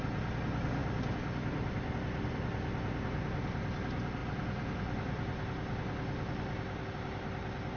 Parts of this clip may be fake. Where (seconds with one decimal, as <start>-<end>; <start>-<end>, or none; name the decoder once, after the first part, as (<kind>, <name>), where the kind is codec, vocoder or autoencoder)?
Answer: 0.8-1.9 (vocoder, BigVGAN v2)

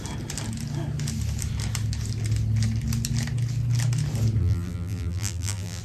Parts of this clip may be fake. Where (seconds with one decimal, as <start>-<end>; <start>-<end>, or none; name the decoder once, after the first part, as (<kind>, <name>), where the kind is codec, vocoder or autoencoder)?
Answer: 4.4-5.8 (vocoder, BigVGAN v2)

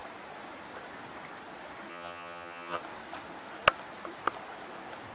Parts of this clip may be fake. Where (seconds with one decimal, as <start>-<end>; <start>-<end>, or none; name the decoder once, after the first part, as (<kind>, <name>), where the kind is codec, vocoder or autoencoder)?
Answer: 1.9-2.8 (vocoder, HiFi-GAN)

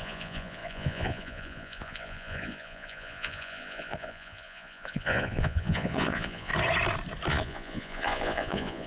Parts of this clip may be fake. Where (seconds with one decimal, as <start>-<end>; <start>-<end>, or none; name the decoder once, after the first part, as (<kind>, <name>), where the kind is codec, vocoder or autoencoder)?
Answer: 0.0-6.5 (vocoder, Vocos); 7.3-8.9

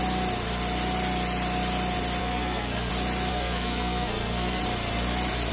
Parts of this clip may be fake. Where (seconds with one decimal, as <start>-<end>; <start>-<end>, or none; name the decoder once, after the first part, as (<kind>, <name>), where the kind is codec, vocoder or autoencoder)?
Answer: 2.2-2.9 (codec, SNAC); 3.3-4.6

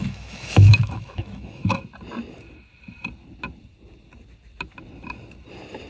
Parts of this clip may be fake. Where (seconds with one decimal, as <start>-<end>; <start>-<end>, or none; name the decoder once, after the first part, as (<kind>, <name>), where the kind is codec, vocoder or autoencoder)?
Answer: 0.0-1.8 (autoencoder, DAC-VAE)